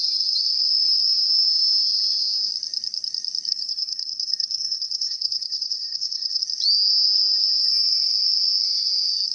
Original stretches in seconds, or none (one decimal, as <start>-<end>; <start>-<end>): 0.0-3.5; 6.4-9.3